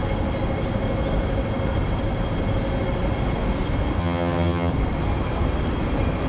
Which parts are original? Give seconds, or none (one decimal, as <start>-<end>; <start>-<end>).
0.0-4.0; 4.7-6.3